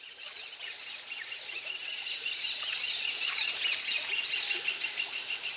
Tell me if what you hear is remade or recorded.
recorded